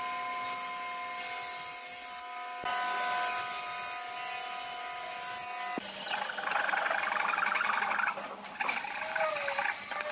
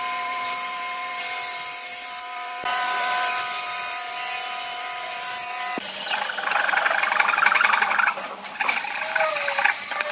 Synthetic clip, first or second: second